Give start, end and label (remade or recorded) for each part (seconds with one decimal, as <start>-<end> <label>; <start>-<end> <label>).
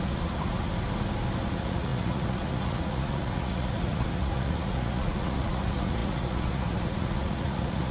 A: 0.0-0.7 remade; 0.7-1.4 recorded; 1.4-7.9 remade